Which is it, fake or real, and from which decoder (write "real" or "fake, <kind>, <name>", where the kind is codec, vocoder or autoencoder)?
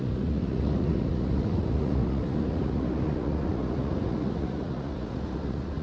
fake, vocoder, Vocos